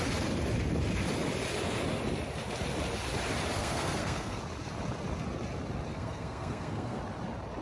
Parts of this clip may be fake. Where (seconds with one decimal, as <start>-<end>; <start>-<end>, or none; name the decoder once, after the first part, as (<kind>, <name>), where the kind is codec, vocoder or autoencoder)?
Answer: 3.6-4.4 (codec, SNAC); 5.9-7.0